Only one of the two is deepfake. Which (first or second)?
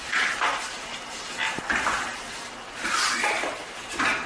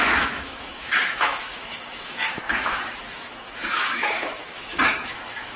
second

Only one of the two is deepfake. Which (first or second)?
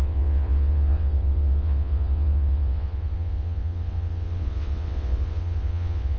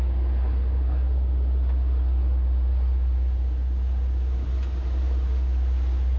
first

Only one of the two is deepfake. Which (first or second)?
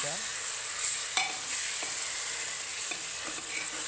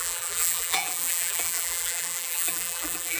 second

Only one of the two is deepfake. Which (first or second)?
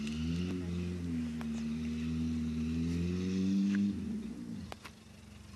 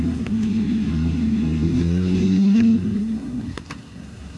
second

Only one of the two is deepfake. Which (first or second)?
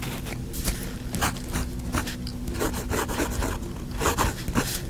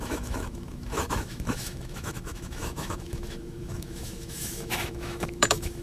second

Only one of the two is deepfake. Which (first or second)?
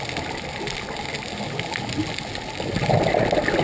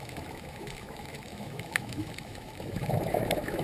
second